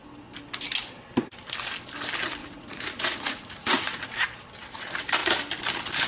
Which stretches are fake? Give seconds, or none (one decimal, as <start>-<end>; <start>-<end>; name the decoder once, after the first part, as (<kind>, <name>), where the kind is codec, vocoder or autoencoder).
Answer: 2.4-4.1 (vocoder, Vocos)